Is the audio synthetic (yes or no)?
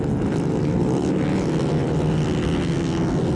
no